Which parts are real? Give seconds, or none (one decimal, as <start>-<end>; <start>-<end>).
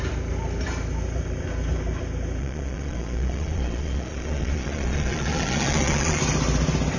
0.0-2.4; 6.2-7.0